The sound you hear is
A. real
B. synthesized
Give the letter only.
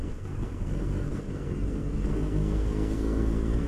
B